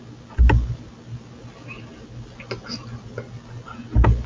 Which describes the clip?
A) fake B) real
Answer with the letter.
B